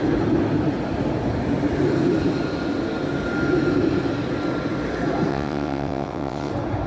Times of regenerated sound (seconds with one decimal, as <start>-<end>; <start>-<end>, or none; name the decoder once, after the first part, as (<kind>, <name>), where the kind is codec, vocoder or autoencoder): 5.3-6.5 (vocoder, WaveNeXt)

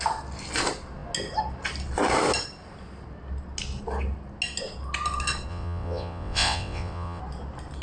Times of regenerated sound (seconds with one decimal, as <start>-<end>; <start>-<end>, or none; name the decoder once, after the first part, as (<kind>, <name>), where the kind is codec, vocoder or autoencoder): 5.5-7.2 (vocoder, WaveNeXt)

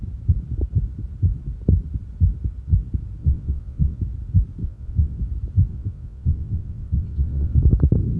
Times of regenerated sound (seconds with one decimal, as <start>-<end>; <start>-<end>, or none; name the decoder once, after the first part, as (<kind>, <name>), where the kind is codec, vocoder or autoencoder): 3.2-4.0 (vocoder, WaveNeXt); 4.6-5.2; 5.7-7.5

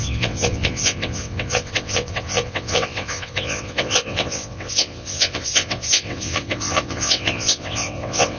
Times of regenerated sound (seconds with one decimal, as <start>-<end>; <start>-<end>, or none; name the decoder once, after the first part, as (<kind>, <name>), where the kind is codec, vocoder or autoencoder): 0.0-8.4 (vocoder, WaveNeXt)